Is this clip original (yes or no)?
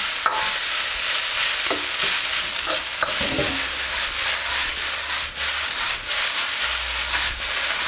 yes